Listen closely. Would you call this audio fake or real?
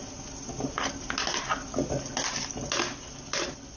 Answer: real